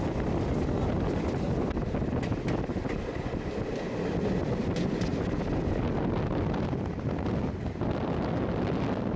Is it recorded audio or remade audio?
recorded